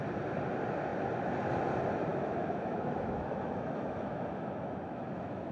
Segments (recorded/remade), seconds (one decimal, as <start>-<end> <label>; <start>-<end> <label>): 0.0-2.1 recorded; 2.1-5.5 remade